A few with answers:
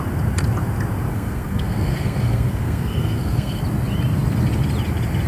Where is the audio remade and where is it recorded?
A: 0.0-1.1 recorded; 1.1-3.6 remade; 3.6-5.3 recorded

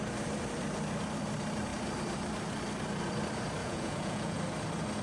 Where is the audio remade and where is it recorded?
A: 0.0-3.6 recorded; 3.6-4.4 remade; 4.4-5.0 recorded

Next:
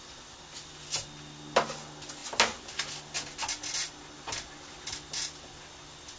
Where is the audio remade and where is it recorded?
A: 0.0-6.2 recorded

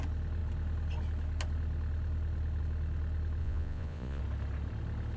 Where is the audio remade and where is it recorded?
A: 0.0-3.4 recorded; 3.4-4.2 remade; 4.2-5.2 recorded